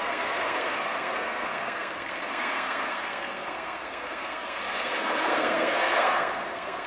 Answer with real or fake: fake